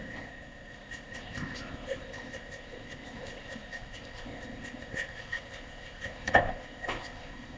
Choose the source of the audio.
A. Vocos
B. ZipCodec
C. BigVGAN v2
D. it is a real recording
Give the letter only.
B